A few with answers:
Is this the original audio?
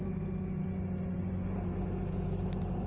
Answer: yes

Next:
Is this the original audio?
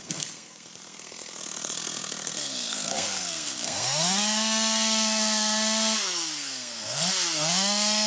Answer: no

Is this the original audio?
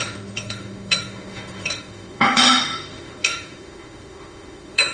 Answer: no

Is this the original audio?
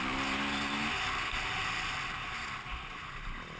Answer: yes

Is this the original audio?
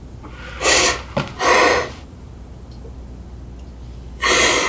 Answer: yes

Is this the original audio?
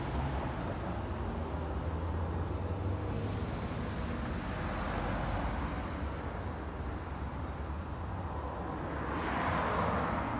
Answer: yes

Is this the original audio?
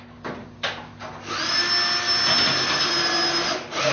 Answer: yes